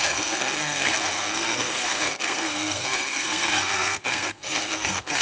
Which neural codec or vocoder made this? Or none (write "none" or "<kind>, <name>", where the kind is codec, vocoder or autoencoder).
codec, SNAC